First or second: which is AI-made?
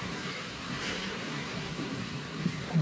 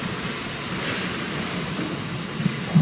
first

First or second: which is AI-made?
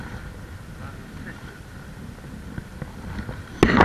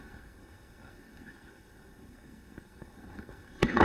second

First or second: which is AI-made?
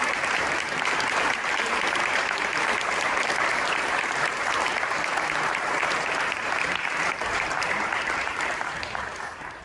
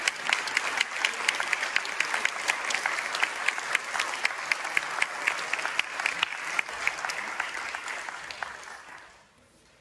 first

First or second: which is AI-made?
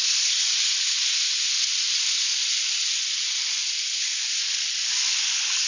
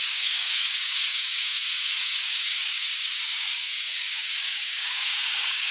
second